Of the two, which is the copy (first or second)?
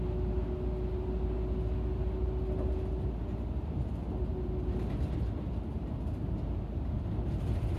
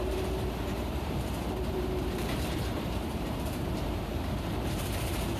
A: second